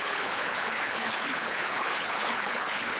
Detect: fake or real fake